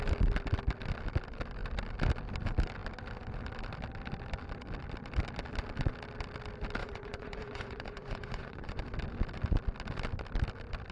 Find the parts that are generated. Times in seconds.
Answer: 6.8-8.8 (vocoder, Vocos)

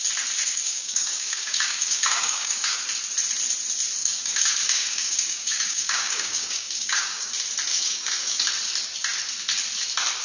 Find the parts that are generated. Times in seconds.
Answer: 0.5-2.8 (codec, DAC); 4.0-7.3; 7.7-8.5